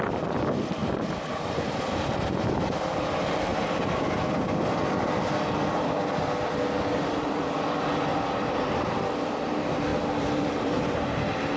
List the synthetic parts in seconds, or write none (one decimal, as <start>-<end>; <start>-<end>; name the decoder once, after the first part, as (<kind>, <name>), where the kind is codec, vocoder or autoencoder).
0.8-2.1 (vocoder, BigVGAN v2); 8.1-8.7; 9.9-10.8